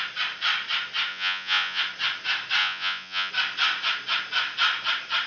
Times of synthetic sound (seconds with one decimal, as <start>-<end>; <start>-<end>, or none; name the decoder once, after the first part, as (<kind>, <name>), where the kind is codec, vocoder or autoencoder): 1.1-1.8 (vocoder, Vocos); 2.6-3.3